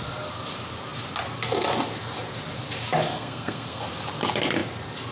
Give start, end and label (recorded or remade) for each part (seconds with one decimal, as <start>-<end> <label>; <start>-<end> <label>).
0.0-3.1 recorded; 3.1-3.8 remade; 3.8-5.1 recorded